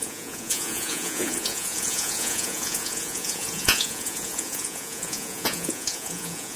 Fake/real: fake